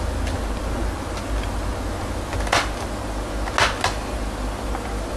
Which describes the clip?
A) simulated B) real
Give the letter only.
B